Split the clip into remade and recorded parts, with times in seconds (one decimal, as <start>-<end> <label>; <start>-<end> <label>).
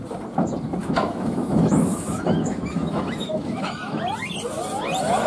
0.0-0.8 recorded; 0.8-4.0 remade; 4.0-5.3 recorded